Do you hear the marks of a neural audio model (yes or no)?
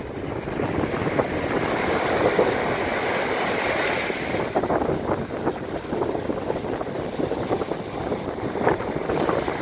no